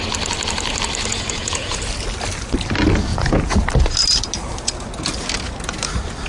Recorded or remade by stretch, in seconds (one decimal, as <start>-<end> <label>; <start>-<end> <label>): 0.0-1.1 recorded; 1.1-1.8 remade; 1.8-3.1 recorded; 3.1-3.6 remade; 3.6-6.3 recorded